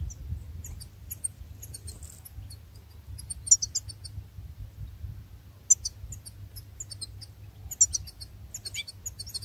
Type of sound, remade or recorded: recorded